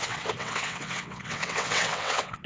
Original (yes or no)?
no